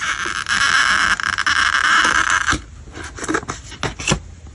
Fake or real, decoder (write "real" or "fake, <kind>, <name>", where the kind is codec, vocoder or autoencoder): real